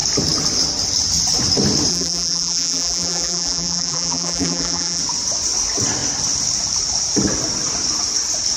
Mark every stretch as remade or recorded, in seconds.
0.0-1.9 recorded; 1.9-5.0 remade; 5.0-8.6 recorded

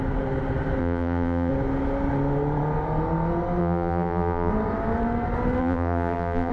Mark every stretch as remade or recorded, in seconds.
0.0-0.8 recorded; 0.8-1.5 remade; 1.5-3.6 recorded; 3.6-4.5 remade; 4.5-5.6 recorded; 5.6-6.5 remade

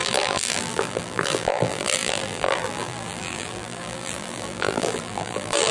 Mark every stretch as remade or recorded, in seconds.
0.0-5.7 remade

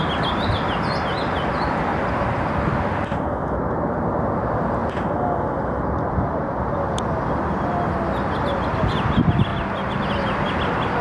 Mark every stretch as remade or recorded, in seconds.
0.0-11.0 recorded

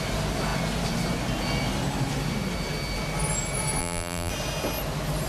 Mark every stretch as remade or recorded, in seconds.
0.0-3.8 recorded; 3.8-4.3 remade; 4.3-5.3 recorded